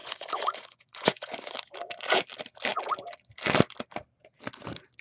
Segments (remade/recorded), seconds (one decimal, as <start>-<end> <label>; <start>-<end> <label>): 0.0-1.5 remade; 1.5-5.0 recorded